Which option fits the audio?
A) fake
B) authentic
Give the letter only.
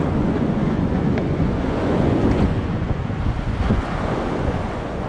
A